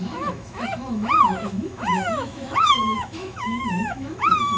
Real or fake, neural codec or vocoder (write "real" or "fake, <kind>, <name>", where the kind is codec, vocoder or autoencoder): fake, autoencoder, DAC-VAE